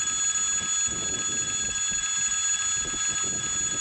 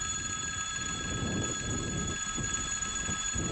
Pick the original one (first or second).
first